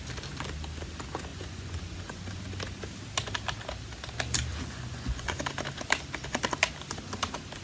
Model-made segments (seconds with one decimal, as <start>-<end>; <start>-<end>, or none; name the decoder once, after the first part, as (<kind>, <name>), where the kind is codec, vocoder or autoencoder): 1.3-2.4 (vocoder, Vocos); 4.5-5.4

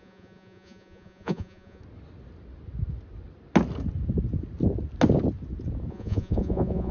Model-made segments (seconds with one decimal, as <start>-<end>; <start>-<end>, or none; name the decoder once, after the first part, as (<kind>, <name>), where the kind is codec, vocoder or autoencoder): 0.0-1.8 (vocoder, Vocos); 5.9-6.9